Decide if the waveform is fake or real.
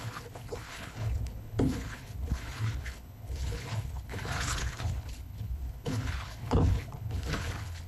fake